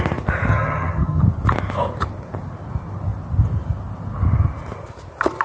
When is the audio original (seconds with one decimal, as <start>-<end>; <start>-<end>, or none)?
0.0-0.5; 1.2-5.4